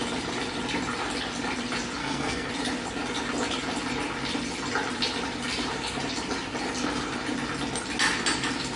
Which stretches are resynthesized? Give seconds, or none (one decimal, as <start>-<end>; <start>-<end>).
2.0-2.5